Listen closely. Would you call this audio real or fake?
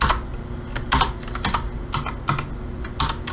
real